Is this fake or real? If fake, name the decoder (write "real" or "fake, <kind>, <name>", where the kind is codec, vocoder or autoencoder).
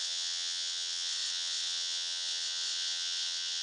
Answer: fake, vocoder, WaveNeXt